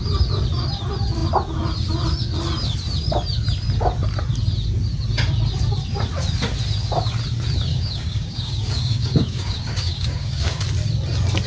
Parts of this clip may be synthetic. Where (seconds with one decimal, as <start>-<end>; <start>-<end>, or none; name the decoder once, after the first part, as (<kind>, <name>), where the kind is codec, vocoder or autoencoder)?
7.7-10.6 (codec, DAC)